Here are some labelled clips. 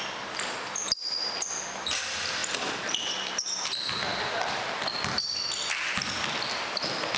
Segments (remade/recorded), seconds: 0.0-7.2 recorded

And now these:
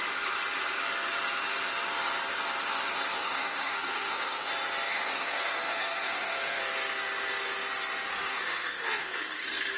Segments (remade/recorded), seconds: 0.0-3.2 recorded; 3.2-4.5 remade; 4.5-4.9 recorded; 4.9-6.6 remade; 6.6-8.1 recorded; 8.1-9.8 remade

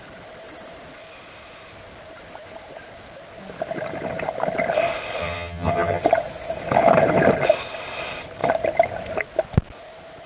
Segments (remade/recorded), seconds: 0.0-5.2 recorded; 5.2-6.0 remade; 6.0-10.3 recorded